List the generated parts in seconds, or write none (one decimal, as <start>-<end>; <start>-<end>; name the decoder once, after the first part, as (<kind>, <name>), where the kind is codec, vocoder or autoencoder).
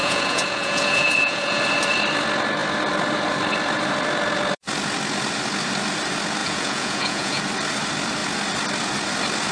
0.0-1.6 (vocoder, Vocos); 6.4-7.4